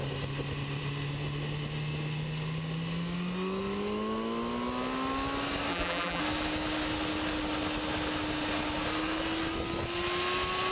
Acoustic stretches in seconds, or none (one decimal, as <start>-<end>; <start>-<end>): 0.0-5.7; 6.2-10.7